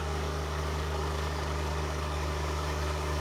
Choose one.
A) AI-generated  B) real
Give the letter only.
A